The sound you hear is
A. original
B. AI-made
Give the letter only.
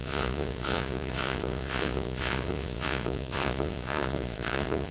B